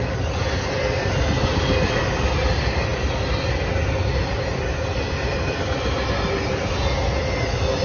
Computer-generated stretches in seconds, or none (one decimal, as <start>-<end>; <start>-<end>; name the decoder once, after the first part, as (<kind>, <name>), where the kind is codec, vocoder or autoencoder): none